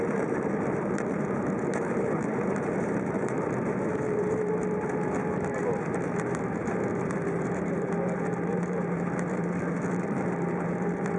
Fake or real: fake